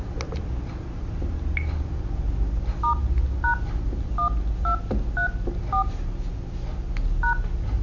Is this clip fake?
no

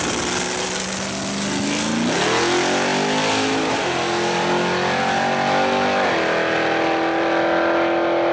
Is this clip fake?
no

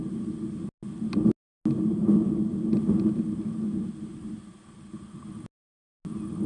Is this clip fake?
no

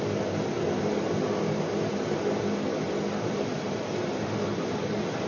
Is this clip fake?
no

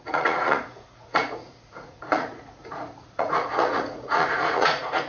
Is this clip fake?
yes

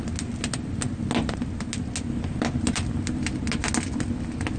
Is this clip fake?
no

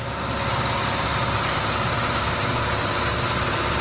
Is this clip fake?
no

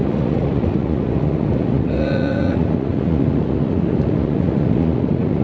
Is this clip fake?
yes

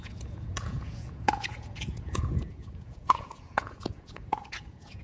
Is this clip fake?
yes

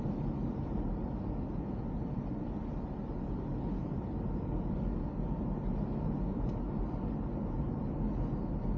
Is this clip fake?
no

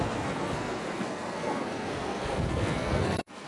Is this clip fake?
yes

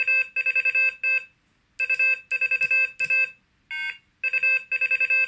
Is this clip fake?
no